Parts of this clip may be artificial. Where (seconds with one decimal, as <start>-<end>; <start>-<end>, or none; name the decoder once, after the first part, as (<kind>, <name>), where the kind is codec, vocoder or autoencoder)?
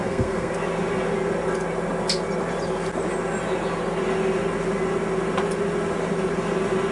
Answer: 0.0-0.5 (codec, SNAC)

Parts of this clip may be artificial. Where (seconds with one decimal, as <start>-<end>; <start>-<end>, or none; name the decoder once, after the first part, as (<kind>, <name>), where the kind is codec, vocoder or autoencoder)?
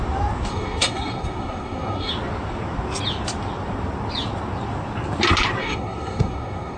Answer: 0.5-2.1 (codec, SNAC); 5.6-6.8